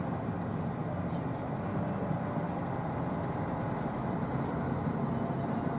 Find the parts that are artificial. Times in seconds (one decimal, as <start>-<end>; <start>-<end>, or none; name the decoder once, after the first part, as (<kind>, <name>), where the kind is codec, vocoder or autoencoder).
none